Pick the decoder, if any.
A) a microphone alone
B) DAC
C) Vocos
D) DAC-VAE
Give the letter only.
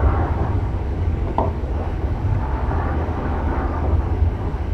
B